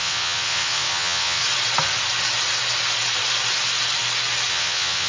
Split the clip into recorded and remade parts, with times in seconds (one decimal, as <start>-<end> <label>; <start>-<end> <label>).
0.0-1.4 remade; 1.4-4.5 recorded; 4.5-5.1 remade